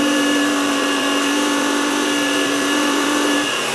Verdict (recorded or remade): remade